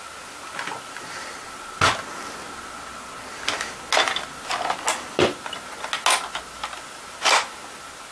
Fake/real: real